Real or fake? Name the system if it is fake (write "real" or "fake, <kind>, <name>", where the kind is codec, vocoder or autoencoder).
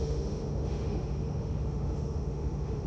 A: fake, autoencoder, DAC-VAE